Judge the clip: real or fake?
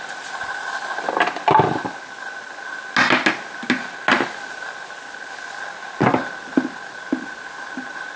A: real